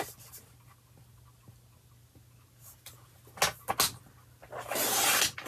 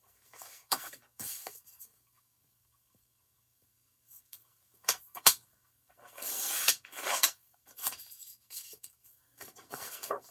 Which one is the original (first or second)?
first